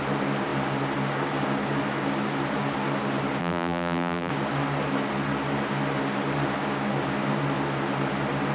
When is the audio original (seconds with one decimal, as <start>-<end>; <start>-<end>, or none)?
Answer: 0.0-3.4; 4.3-8.5